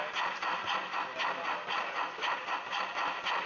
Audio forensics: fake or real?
real